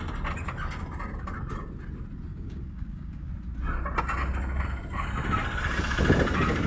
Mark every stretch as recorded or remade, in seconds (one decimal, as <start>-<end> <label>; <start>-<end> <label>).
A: 0.0-2.3 recorded; 2.3-3.3 remade; 3.3-6.7 recorded